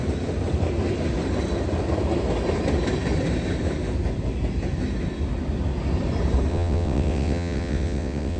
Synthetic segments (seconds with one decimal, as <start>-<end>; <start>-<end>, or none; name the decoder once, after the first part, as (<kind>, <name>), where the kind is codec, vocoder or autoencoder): 6.5-8.4 (vocoder, WaveNeXt)